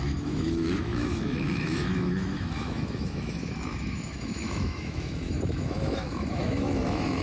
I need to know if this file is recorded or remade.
remade